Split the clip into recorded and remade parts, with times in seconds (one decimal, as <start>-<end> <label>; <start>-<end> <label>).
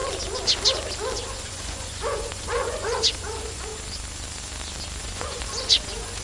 0.0-1.3 recorded; 1.3-3.7 remade; 3.7-5.0 recorded; 5.0-6.2 remade